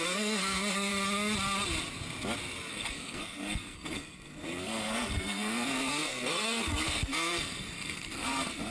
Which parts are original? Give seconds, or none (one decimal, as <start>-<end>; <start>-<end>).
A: 0.9-2.7